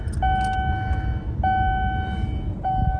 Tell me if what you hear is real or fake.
real